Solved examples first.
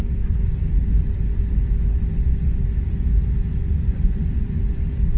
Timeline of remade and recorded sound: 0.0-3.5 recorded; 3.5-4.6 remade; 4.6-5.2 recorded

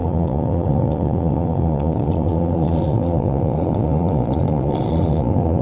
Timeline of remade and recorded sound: 0.0-5.6 remade

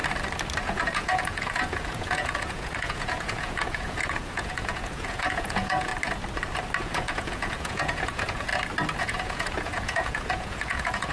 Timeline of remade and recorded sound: 0.0-0.6 recorded; 0.6-5.9 remade; 5.9-6.8 recorded; 6.8-8.5 remade; 8.5-9.0 recorded; 9.0-11.1 remade

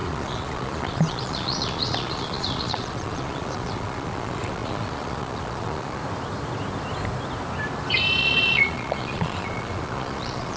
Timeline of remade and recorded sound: 0.0-6.0 remade; 6.0-8.2 recorded; 8.2-10.6 remade

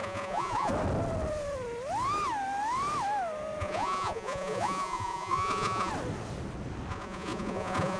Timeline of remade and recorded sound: 0.0-0.7 remade; 0.7-3.6 recorded; 3.6-5.9 remade; 5.9-6.9 recorded; 6.9-8.0 remade

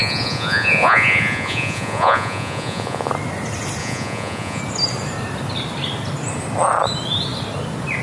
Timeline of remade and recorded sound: 0.0-3.1 remade; 3.1-3.8 recorded; 3.8-4.6 remade; 4.6-8.0 recorded

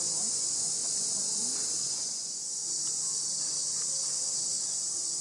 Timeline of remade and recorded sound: 0.0-0.8 remade; 0.8-1.8 recorded; 1.8-2.6 remade; 2.6-4.1 recorded; 4.1-5.2 remade

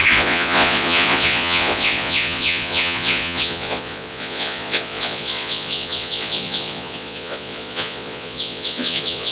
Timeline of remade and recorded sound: 0.0-9.3 remade